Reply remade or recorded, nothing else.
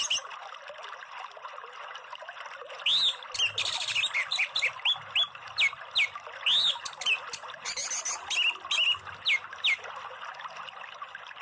recorded